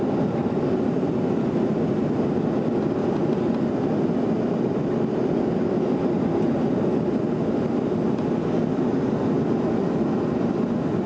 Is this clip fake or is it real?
real